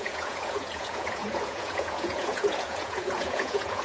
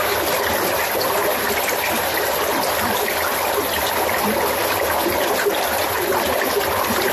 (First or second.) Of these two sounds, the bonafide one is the second